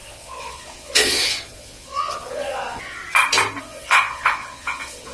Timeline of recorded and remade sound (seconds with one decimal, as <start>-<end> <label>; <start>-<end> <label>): 0.0-3.0 remade; 3.0-3.6 recorded; 3.6-5.1 remade